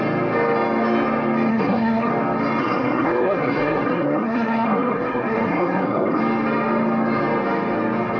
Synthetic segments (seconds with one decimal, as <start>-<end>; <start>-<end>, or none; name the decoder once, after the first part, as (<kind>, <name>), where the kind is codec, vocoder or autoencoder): 1.5-2.1 (codec, SNAC); 2.6-6.2